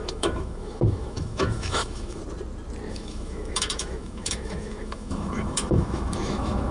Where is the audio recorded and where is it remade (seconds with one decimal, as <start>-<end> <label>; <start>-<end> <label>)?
0.0-2.2 remade; 2.2-2.9 recorded; 2.9-6.7 remade